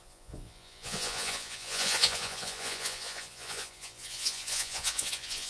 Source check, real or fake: fake